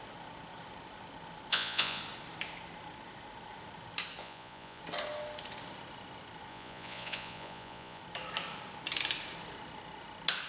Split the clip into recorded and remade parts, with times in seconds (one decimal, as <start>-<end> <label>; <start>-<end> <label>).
0.0-1.5 recorded; 1.5-2.0 remade; 2.0-4.2 recorded; 4.2-4.8 remade; 4.8-6.5 recorded; 6.5-8.0 remade; 8.0-10.5 recorded